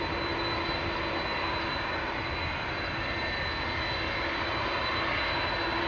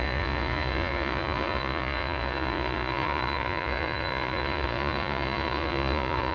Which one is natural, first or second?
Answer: first